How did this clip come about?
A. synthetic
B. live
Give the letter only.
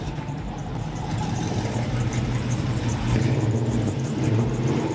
A